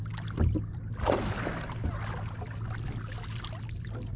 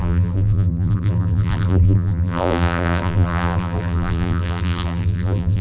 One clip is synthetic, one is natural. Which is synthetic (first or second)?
second